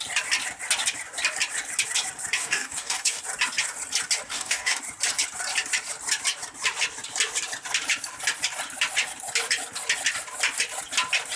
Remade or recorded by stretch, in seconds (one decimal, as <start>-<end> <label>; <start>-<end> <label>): 0.0-2.4 recorded; 2.4-3.2 remade; 3.2-4.3 recorded; 4.3-4.8 remade; 4.8-11.4 recorded